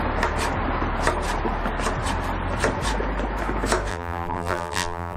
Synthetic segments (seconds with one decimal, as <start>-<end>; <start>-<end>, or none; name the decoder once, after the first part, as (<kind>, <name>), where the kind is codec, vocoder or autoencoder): 3.9-5.2 (vocoder, BigVGAN v2)